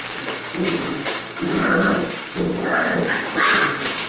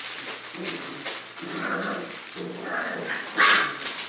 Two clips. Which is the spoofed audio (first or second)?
first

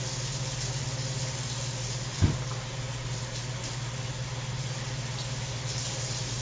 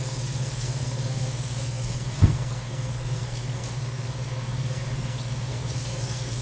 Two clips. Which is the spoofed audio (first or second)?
second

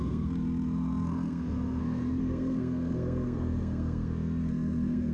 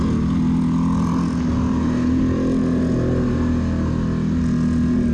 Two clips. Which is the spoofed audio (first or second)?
first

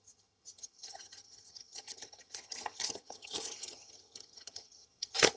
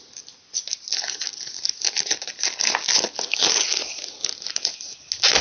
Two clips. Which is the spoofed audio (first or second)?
first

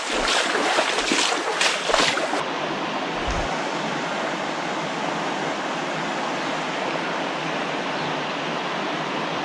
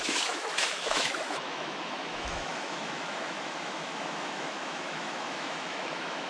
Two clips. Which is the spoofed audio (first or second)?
second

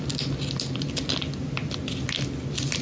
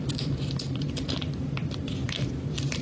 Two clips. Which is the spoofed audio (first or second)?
second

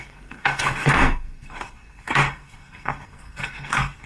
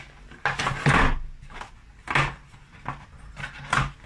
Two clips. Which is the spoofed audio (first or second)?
first